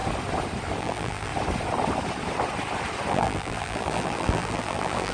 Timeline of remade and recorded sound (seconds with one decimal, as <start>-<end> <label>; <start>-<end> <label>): 0.0-0.8 recorded; 0.8-1.3 remade; 1.3-3.1 recorded; 3.1-5.1 remade